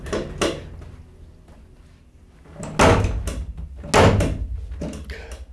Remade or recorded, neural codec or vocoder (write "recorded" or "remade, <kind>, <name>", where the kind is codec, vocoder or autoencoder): recorded